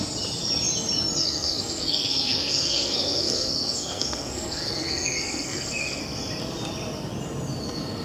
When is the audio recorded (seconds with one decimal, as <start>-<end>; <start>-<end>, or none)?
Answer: 0.0-1.2; 6.0-8.0